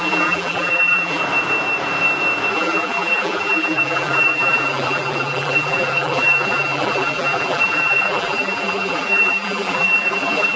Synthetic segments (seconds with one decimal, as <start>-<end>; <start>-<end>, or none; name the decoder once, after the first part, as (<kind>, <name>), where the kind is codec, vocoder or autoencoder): 0.0-1.2 (vocoder, BigVGAN v2); 2.5-10.6